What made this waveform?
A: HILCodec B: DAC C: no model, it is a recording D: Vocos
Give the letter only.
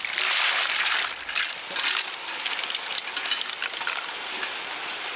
C